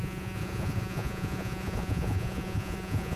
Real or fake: fake